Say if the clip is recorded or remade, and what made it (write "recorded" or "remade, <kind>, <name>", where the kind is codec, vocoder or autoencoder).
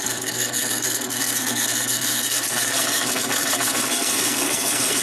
remade, codec, SNAC